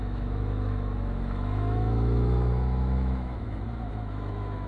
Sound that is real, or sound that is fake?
fake